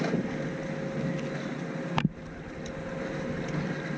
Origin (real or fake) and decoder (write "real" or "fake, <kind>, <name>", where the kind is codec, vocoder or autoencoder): real